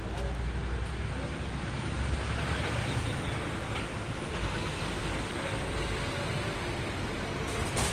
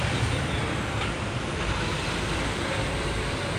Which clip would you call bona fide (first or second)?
first